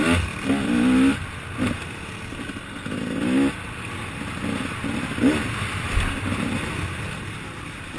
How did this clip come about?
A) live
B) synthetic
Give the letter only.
A